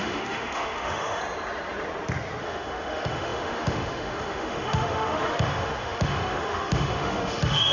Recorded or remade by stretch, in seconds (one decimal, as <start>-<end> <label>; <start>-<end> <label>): 0.0-1.2 remade; 1.2-2.4 recorded; 2.4-7.7 remade